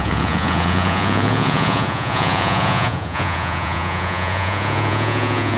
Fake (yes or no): yes